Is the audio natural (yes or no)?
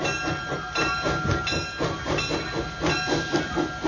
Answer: yes